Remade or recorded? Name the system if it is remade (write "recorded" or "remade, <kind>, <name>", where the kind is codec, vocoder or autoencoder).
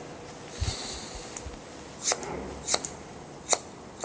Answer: recorded